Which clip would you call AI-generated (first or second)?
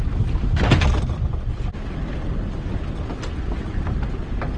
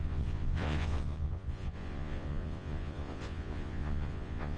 second